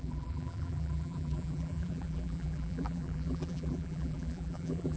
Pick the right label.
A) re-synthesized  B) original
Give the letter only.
A